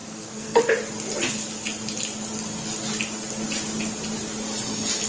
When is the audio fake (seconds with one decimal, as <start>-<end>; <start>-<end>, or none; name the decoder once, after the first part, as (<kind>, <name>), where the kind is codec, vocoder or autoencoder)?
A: 0.0-0.6 (codec, SNAC)